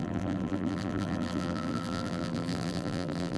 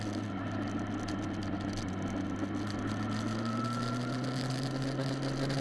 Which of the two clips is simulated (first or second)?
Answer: first